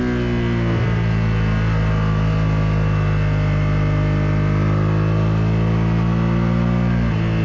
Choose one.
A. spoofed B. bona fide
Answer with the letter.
B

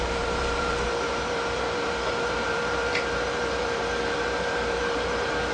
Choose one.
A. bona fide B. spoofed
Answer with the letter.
B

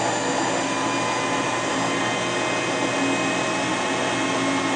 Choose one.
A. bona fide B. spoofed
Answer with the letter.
A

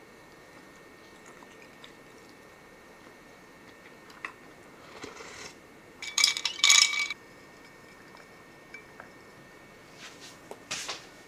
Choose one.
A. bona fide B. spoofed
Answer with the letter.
B